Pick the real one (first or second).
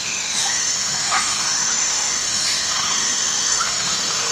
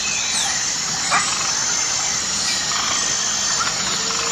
second